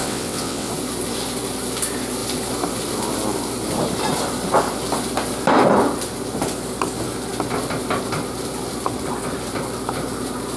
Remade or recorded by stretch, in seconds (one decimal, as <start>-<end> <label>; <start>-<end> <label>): 0.0-0.7 remade; 0.7-10.6 recorded